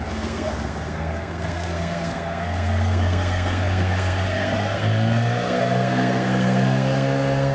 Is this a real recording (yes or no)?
no